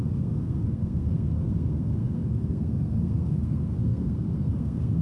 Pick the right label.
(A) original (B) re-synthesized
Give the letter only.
B